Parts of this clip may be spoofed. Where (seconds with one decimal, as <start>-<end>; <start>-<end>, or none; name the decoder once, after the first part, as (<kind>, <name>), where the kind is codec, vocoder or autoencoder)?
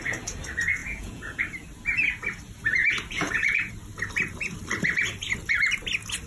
0.8-1.4 (vocoder, Vocos); 2.8-3.7